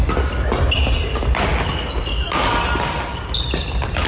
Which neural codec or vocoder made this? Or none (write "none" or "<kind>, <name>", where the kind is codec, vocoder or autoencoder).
none